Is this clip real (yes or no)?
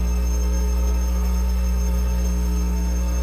no